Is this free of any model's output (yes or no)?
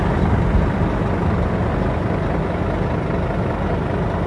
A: yes